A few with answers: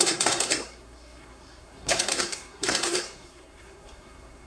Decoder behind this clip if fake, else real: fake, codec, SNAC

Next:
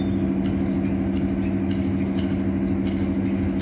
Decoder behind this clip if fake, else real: real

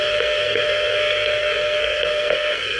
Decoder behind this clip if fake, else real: fake, codec, SNAC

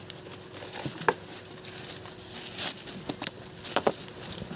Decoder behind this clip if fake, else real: real